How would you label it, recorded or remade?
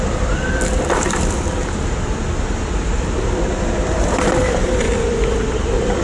remade